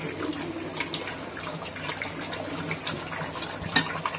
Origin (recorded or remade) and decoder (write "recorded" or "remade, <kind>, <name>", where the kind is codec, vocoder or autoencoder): recorded